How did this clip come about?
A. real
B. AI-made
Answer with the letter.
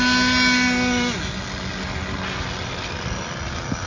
A